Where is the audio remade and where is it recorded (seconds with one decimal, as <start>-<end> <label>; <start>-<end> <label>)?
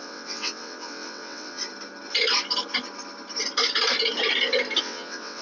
0.0-1.6 remade; 1.6-4.8 recorded; 4.8-5.4 remade